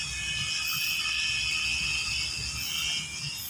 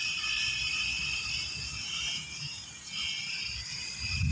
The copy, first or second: second